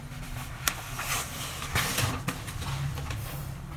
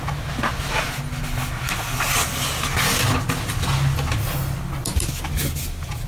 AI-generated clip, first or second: first